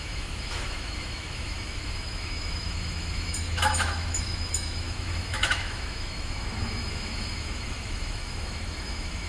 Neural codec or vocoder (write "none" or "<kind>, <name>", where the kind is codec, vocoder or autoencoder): autoencoder, DAC-VAE